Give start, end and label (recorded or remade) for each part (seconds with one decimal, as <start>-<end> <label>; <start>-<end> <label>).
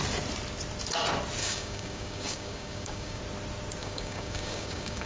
0.0-1.4 recorded; 1.4-3.2 remade; 3.2-3.8 recorded; 3.8-5.1 remade